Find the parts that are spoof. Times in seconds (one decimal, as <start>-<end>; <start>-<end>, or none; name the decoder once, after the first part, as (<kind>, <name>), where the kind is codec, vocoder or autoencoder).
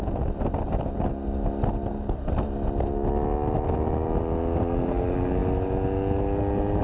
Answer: none